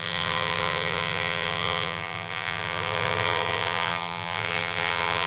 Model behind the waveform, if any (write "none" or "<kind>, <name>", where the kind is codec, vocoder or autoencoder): vocoder, BigVGAN v2